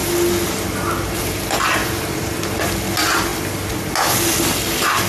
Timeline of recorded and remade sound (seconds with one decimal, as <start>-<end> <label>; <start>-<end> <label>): 0.0-1.8 recorded; 1.8-2.6 remade; 2.6-5.1 recorded

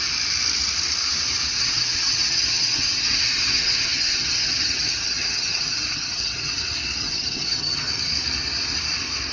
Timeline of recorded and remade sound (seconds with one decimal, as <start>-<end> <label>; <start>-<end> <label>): 0.0-1.5 recorded; 1.5-6.5 remade; 6.5-7.0 recorded; 7.0-7.9 remade; 7.9-9.3 recorded

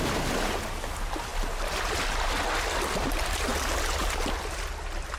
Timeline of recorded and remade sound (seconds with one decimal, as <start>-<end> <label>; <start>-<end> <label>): 0.0-5.2 recorded

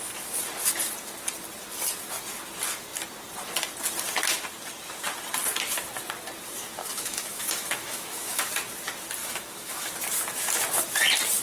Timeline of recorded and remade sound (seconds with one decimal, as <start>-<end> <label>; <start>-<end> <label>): 0.0-6.8 recorded; 6.8-8.5 remade; 8.5-9.2 recorded; 9.2-9.9 remade; 9.9-11.4 recorded